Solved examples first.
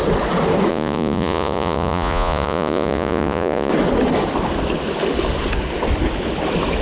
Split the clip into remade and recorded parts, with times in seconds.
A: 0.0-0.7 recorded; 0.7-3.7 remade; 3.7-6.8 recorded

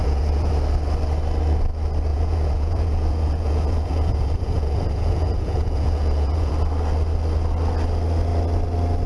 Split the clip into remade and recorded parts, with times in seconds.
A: 0.0-0.5 remade; 0.5-2.1 recorded; 2.1-6.5 remade; 6.5-9.1 recorded

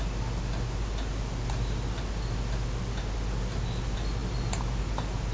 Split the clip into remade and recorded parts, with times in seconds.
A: 0.0-5.3 recorded

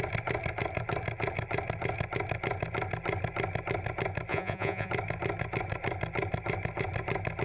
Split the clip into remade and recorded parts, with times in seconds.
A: 0.0-4.3 recorded; 4.3-4.9 remade; 4.9-7.4 recorded

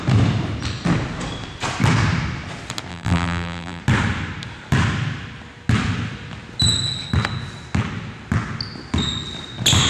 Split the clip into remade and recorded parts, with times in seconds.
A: 0.0-2.9 recorded; 2.9-3.8 remade; 3.8-9.9 recorded

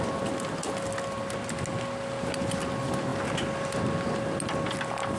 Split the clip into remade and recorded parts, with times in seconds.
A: 0.0-5.2 recorded